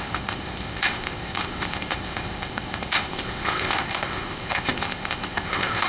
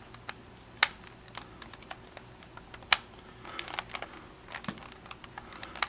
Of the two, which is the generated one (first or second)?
first